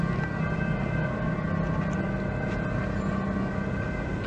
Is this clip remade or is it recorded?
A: recorded